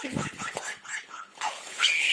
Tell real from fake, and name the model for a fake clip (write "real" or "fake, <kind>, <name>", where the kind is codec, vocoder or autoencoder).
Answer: fake, codec, HILCodec